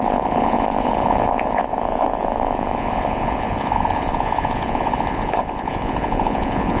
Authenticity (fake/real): fake